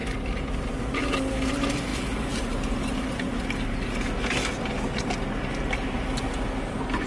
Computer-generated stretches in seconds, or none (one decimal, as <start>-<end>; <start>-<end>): none